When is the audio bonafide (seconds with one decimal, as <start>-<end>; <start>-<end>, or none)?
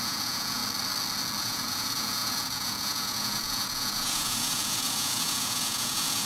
0.6-1.4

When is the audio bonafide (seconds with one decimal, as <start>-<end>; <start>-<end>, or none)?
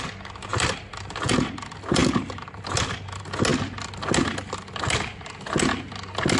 0.0-0.5; 1.3-6.4